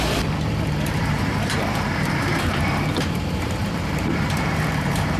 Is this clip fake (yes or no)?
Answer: yes